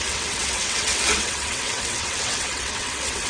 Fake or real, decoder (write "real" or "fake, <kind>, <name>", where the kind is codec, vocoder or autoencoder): fake, vocoder, WaveNeXt